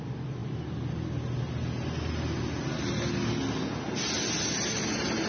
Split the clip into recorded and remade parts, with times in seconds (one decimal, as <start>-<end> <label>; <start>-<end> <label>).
0.0-5.3 recorded